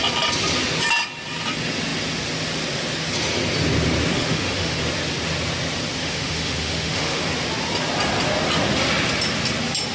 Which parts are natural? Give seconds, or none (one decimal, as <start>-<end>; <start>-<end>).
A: 0.0-4.1; 4.8-6.0; 7.2-9.9